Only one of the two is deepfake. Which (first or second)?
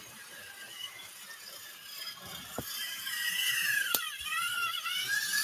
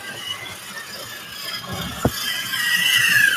first